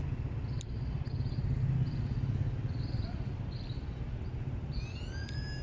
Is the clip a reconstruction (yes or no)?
no